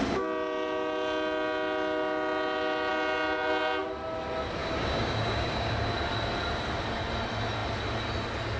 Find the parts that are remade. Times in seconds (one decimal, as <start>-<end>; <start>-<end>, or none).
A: 4.6-5.7